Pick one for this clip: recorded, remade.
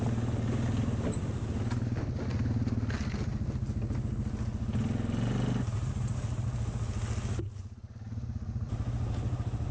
recorded